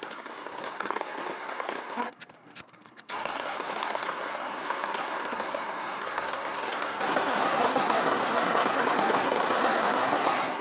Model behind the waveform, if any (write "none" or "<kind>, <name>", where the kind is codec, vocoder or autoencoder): codec, SNAC